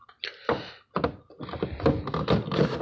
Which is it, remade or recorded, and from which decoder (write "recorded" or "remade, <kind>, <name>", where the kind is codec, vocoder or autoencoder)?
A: recorded